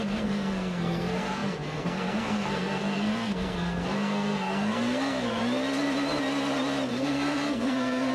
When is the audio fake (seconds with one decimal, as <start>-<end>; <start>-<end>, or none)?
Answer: 0.0-5.4; 6.9-8.1